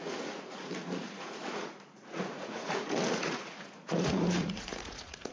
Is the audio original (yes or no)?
no